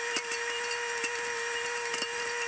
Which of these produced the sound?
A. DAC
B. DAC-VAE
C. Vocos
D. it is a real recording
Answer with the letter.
D